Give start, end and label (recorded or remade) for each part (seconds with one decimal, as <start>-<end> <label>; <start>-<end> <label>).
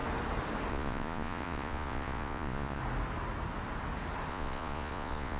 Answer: 0.0-0.7 recorded; 0.7-2.8 remade; 2.8-4.3 recorded; 4.3-5.4 remade